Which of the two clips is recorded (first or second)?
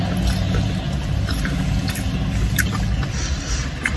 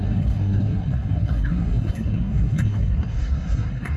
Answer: first